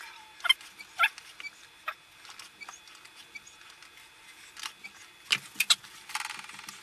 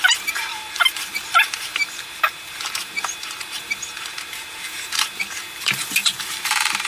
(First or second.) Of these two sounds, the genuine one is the first